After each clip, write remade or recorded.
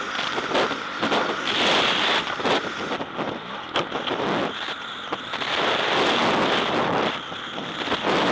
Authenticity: recorded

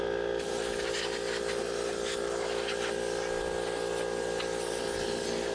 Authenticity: recorded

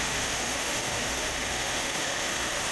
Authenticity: remade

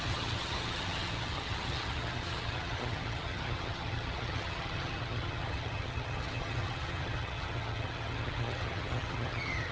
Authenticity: remade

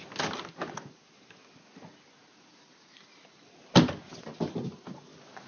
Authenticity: recorded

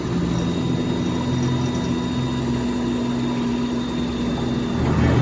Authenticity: recorded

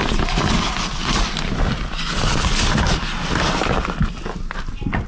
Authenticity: recorded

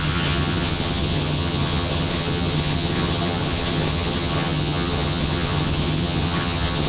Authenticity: remade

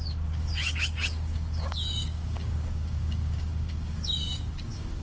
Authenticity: remade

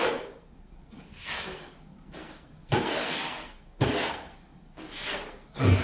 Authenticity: remade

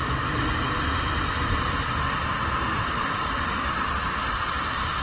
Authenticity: remade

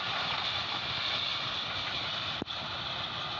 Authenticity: recorded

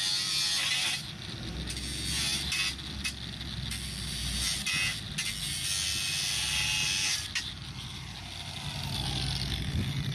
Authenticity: recorded